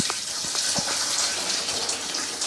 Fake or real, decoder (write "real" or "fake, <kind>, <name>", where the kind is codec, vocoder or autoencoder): real